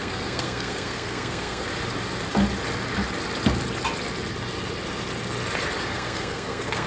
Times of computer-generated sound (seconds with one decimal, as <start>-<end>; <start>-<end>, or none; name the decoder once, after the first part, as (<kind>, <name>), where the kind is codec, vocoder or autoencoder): 0.0-1.7 (codec, SNAC); 5.8-6.9